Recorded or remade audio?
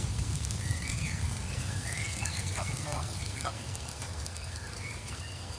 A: remade